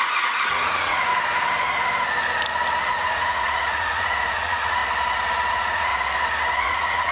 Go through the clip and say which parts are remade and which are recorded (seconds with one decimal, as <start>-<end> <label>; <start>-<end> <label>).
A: 0.0-1.1 remade; 1.1-2.9 recorded; 2.9-4.8 remade; 4.8-5.5 recorded; 5.5-5.9 remade; 5.9-6.5 recorded; 6.5-7.1 remade